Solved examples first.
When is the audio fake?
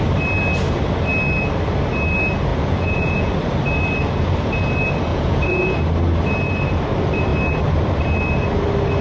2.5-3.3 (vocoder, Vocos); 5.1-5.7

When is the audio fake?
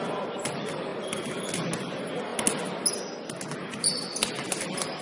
0.9-1.4 (vocoder, BigVGAN v2)